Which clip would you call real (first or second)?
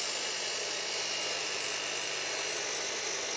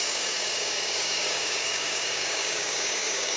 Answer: first